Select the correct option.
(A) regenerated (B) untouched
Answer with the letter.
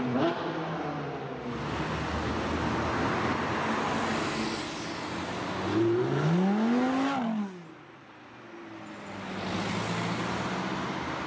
B